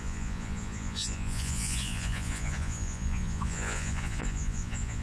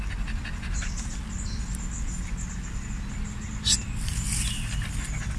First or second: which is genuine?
second